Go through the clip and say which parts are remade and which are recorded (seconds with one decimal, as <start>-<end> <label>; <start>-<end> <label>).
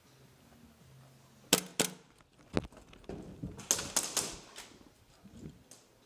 0.0-6.1 recorded